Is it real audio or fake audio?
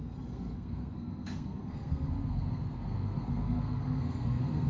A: fake